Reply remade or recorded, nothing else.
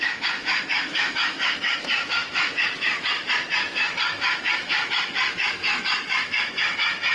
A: remade